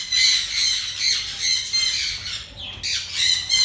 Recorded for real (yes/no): yes